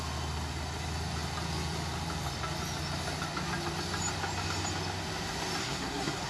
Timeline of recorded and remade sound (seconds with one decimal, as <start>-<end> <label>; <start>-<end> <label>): 0.0-5.6 recorded; 5.6-6.3 remade